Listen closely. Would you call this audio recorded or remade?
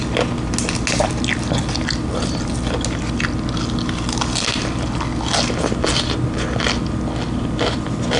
recorded